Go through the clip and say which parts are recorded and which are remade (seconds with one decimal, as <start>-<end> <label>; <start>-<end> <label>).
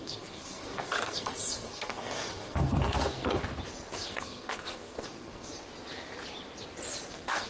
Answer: 0.0-3.4 remade; 3.4-3.9 recorded; 3.9-5.5 remade; 5.5-7.1 recorded; 7.1-7.5 remade